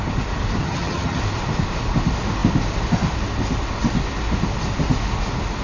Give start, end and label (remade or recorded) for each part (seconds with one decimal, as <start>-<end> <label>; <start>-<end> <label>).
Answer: 0.0-0.6 recorded; 0.6-1.2 remade; 1.2-5.6 recorded